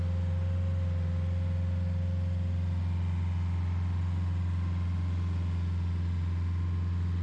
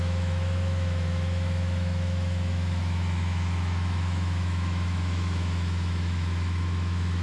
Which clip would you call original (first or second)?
first